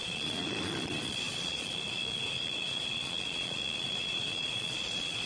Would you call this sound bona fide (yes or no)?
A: no